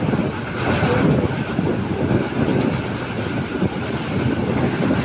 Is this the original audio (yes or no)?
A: yes